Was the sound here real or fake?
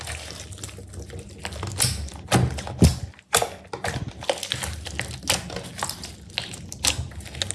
real